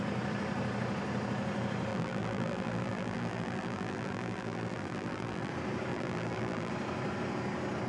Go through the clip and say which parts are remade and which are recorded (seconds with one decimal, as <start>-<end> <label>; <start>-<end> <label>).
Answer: 0.0-1.9 recorded; 1.9-5.5 remade; 5.5-5.9 recorded; 5.9-6.7 remade; 6.7-7.9 recorded